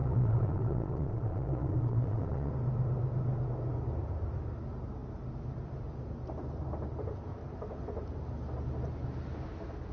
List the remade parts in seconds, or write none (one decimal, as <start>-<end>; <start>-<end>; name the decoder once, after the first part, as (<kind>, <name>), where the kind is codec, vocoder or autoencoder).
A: 0.0-2.5 (vocoder, Vocos)